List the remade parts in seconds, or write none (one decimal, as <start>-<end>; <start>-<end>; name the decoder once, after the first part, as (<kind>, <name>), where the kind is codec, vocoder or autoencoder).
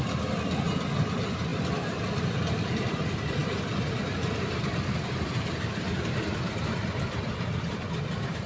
3.4-8.5 (vocoder, BigVGAN v2)